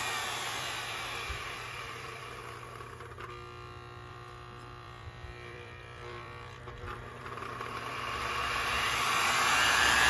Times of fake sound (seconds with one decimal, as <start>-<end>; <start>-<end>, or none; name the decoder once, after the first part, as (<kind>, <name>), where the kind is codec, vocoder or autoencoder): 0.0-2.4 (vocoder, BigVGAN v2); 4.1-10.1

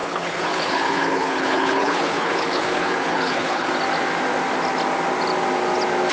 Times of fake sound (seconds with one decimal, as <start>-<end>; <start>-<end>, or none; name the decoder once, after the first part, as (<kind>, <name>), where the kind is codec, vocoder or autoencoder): 0.0-3.7 (codec, HILCodec)

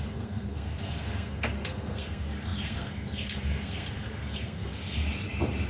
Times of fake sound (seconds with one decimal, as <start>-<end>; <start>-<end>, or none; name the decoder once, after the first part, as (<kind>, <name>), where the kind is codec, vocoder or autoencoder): 0.0-5.0 (codec, SNAC)